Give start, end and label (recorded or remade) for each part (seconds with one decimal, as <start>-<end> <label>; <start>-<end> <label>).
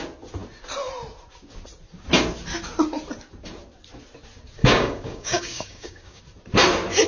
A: 0.0-4.6 recorded; 4.6-6.2 remade; 6.2-7.1 recorded